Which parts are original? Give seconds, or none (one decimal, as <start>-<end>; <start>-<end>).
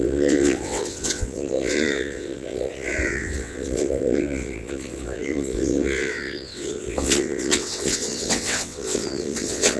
none